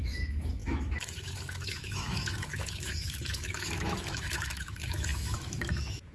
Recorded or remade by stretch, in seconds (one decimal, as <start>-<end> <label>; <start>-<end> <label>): 0.0-6.1 remade